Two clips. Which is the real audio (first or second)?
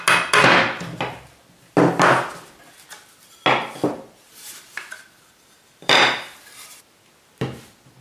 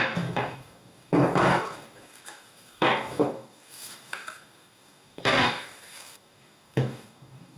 first